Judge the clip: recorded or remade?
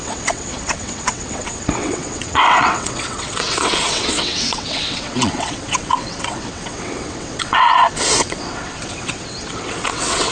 remade